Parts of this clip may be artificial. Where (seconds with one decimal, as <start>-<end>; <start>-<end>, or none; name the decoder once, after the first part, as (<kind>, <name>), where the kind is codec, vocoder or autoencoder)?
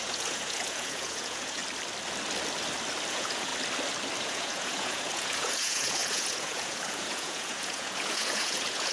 0.0-1.6 (vocoder, Vocos); 3.1-3.5; 4.2-8.9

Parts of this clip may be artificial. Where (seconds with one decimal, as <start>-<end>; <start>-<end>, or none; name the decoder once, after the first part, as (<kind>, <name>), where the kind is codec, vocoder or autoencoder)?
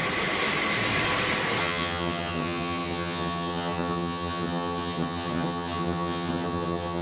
1.6-7.0 (vocoder, HiFi-GAN)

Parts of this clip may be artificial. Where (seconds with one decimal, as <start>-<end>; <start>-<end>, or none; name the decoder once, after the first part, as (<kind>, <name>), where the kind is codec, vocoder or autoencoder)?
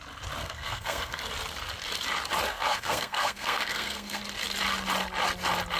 0.4-1.2 (codec, SNAC); 2.5-4.2